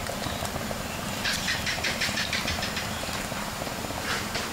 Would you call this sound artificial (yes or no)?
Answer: yes